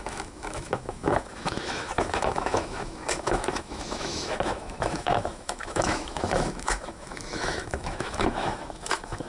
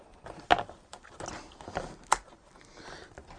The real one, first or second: second